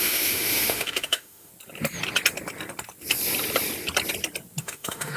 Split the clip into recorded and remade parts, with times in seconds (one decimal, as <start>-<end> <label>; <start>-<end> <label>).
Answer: 0.0-1.5 remade; 1.5-4.6 recorded; 4.6-5.2 remade